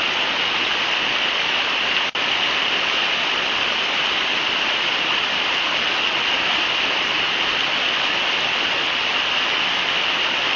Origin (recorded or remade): recorded